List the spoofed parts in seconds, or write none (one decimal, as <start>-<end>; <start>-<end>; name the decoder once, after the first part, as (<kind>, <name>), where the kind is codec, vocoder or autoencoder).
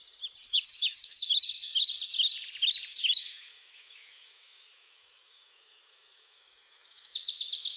0.6-1.7 (autoencoder, DAC-VAE); 3.0-7.8